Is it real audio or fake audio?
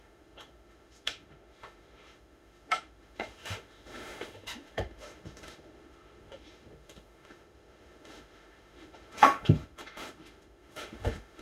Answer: fake